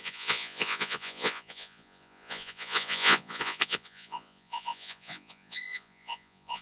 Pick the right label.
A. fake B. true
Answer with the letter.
A